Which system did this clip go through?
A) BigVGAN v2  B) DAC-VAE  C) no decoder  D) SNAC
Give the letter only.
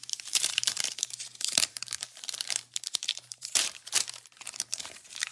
A